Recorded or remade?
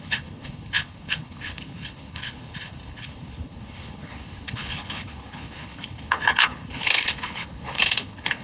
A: remade